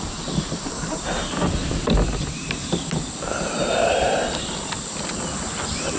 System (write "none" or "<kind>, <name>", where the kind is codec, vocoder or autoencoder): none